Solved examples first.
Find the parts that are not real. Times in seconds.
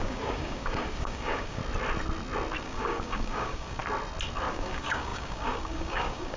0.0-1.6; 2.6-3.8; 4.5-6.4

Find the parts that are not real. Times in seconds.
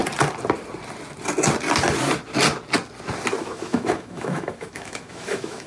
3.4-5.7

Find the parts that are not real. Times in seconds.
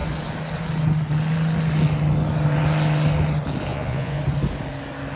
3.7-4.2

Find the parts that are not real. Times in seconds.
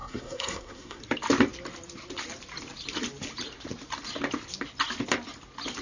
0.0-1.0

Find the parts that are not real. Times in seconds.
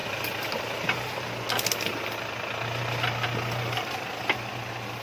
none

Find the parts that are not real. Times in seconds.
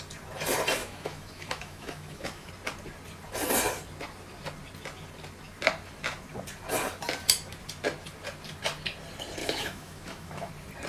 0.8-2.5; 9.4-10.5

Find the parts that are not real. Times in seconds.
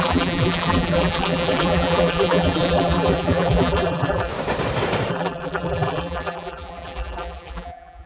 0.0-4.3; 5.1-8.1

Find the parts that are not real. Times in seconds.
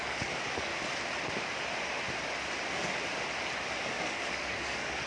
0.0-0.7; 3.8-5.1